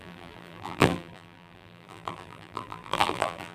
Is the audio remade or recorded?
remade